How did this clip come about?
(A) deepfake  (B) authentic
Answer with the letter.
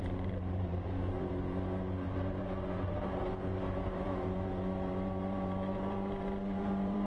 A